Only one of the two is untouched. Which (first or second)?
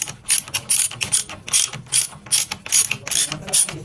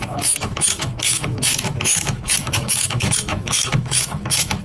first